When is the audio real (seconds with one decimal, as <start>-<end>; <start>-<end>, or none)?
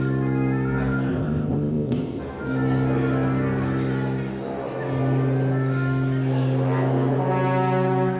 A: 0.0-1.1; 2.2-8.2